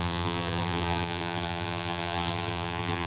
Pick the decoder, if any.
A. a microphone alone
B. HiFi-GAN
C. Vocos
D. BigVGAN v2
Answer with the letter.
D